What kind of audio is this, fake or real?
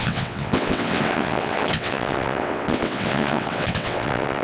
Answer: fake